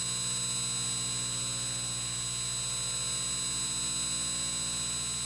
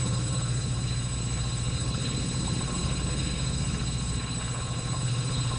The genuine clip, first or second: first